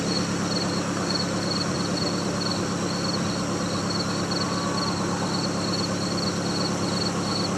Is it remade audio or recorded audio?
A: recorded